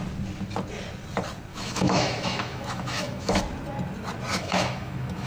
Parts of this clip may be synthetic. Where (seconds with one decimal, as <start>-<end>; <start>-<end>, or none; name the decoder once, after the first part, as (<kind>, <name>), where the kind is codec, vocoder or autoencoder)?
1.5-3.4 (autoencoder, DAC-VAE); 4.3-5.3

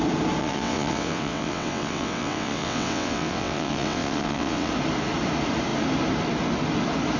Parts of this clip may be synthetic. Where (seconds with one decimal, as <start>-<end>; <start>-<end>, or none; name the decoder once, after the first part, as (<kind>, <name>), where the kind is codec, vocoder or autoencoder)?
0.4-4.7 (vocoder, WaveNeXt)

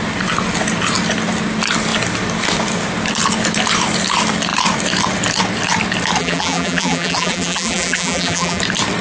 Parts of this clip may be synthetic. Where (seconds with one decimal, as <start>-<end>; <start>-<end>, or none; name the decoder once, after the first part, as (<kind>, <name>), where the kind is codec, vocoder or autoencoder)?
6.2-8.6 (vocoder, BigVGAN v2)

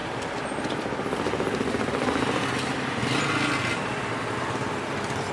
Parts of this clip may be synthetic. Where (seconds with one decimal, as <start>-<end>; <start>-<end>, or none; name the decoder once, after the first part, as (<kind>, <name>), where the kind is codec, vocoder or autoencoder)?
0.0-3.2 (vocoder, BigVGAN v2)

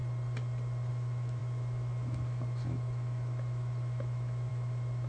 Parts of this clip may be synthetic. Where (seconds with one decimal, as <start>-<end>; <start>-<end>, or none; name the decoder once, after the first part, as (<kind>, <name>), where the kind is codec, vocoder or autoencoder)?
0.9-5.1 (autoencoder, DAC-VAE)